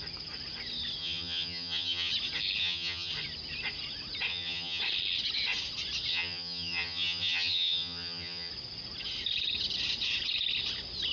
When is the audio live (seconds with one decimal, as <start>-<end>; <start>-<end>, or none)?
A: 0.0-1.0; 2.1-2.6; 3.1-4.3; 4.8-6.1; 8.5-11.1